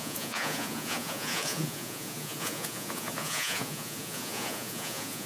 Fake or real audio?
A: fake